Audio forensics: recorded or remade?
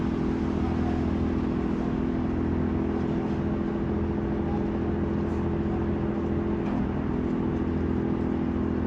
recorded